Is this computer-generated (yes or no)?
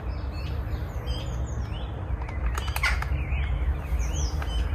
no